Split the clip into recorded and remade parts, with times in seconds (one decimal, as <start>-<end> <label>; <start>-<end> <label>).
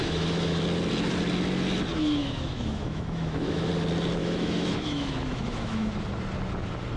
0.0-0.6 remade; 0.6-2.2 recorded; 2.2-3.7 remade; 3.7-4.2 recorded; 4.2-5.9 remade; 5.9-7.0 recorded